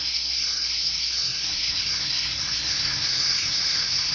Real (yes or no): no